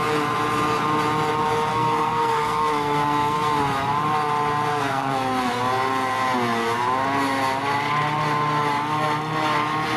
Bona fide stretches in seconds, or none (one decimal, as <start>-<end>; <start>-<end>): 0.0-1.7; 3.5-4.7; 5.6-10.0